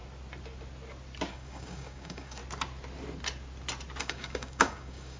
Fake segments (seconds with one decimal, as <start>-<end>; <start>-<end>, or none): 1.3-2.4; 4.0-5.2